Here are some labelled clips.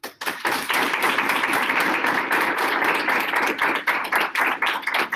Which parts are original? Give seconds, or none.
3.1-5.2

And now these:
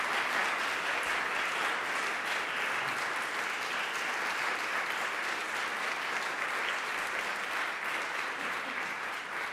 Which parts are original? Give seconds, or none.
0.0-8.1

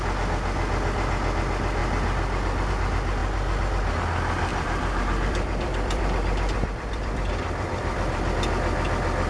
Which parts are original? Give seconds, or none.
0.0-4.5; 8.3-9.3